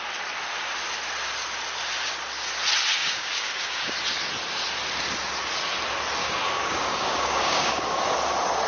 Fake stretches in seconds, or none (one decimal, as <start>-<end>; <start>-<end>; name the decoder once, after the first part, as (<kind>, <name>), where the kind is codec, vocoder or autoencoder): 3.0-3.9 (codec, DAC); 6.2-8.0